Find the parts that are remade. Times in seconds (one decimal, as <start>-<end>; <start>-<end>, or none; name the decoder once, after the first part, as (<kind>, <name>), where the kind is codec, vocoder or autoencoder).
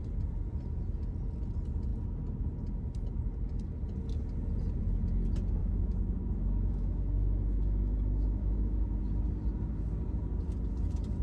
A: 5.6-9.0 (autoencoder, DAC-VAE)